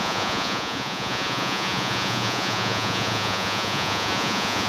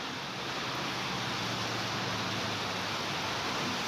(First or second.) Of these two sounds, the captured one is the second